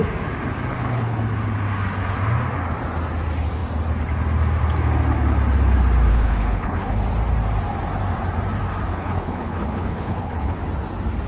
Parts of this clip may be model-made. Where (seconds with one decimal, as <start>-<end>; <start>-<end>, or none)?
0.7-1.2; 6.1-7.0; 8.9-10.6